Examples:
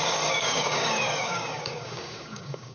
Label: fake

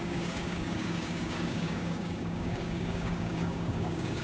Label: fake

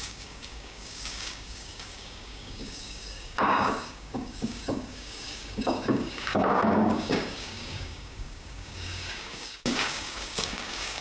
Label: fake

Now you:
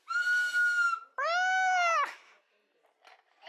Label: real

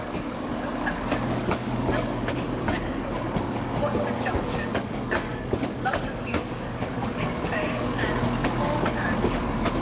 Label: fake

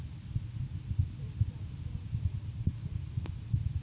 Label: real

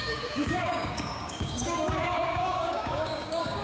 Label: fake